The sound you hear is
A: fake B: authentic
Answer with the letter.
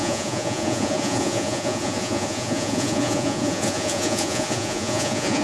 A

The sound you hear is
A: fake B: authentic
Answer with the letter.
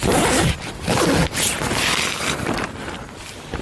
B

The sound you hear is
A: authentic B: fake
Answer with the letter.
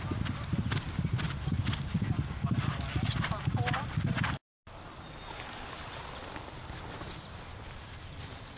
A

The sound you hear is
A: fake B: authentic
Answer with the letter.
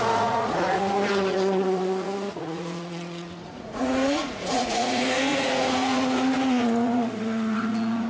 A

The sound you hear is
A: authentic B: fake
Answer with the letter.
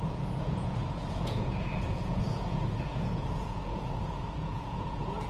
B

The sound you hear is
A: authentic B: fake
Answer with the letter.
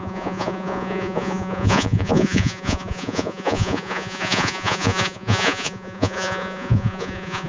B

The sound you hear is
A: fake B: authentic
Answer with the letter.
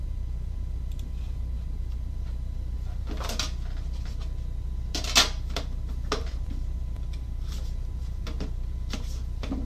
B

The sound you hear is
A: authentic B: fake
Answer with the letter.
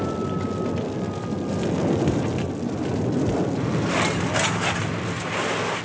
A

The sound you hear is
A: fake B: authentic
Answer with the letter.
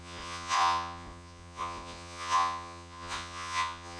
A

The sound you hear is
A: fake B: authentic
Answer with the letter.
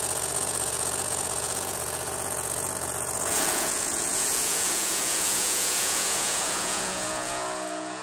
A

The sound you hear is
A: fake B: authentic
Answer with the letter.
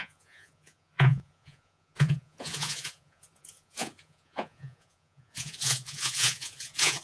A